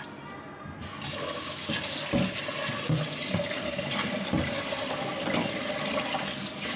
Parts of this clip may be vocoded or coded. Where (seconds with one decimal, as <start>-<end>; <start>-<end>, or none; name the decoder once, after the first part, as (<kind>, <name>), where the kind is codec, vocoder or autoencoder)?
none

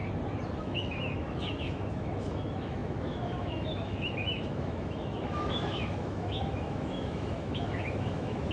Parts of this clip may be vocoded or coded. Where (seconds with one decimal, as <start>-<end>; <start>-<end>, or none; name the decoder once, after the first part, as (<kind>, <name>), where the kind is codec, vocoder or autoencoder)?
0.6-8.5 (autoencoder, DAC-VAE)

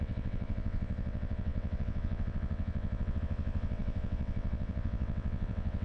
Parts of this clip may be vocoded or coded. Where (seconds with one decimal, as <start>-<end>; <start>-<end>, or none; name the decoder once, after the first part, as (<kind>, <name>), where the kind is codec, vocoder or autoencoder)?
0.0-5.8 (vocoder, WaveNeXt)

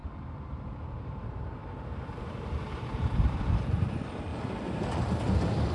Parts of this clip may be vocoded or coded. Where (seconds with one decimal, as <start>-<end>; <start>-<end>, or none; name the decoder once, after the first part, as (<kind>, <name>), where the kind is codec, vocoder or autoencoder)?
0.0-3.4 (vocoder, BigVGAN v2); 4.3-5.0

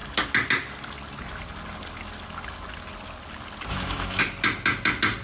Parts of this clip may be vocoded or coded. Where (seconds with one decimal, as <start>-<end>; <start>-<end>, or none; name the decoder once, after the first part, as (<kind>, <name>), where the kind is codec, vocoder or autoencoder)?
3.7-4.2 (autoencoder, DAC-VAE)